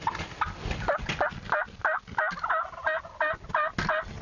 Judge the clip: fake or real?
real